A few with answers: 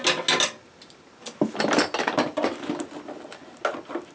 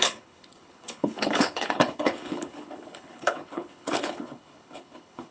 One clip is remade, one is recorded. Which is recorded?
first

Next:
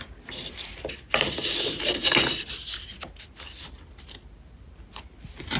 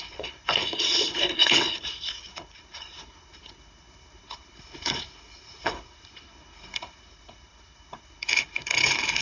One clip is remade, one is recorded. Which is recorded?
first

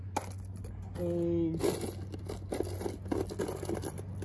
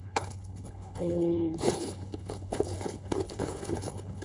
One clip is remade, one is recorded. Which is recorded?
first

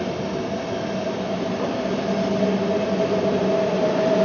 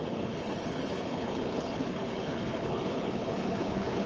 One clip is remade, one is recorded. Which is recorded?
first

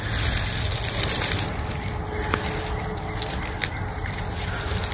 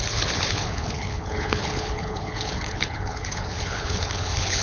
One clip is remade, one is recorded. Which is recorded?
first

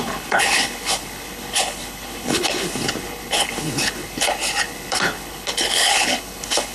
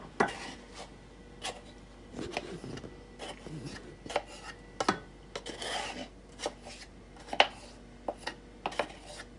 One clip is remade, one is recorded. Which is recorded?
second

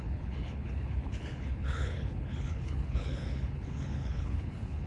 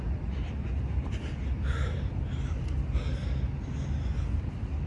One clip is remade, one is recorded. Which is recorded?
second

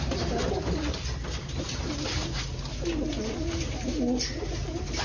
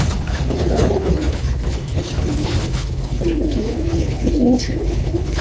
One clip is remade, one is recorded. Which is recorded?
first